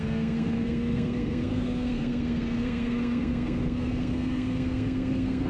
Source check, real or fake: fake